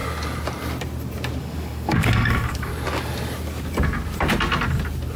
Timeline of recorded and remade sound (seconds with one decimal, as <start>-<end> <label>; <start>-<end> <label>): 0.0-1.4 recorded; 1.4-2.7 remade; 2.7-5.2 recorded